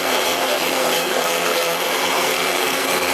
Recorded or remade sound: remade